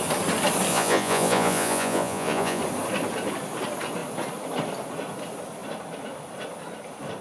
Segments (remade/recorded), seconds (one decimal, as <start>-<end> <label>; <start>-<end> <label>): 0.0-0.7 recorded; 0.7-2.6 remade; 2.6-7.2 recorded